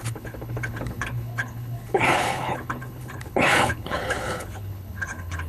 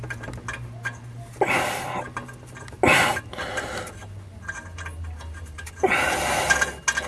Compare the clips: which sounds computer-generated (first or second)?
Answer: first